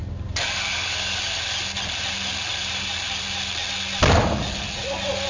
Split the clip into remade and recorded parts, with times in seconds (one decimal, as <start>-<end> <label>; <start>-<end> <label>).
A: 0.0-3.2 remade; 3.2-5.3 recorded